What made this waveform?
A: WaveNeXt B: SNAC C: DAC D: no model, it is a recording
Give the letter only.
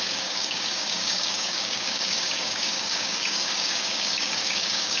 C